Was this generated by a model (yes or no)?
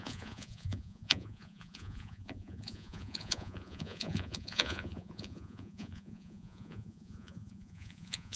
yes